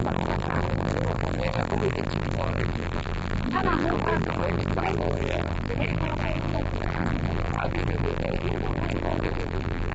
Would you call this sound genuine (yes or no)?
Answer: no